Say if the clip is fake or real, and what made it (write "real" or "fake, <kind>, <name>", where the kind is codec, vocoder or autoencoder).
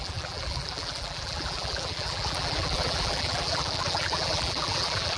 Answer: fake, vocoder, BigVGAN v2